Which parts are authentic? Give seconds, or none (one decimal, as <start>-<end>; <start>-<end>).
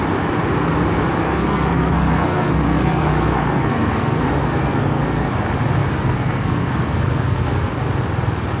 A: 0.0-1.2; 5.3-5.8; 7.7-8.6